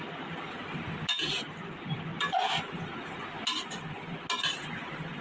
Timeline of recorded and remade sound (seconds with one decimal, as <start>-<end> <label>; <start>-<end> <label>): 0.0-5.2 recorded